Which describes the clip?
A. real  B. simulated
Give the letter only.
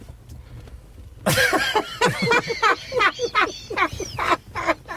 A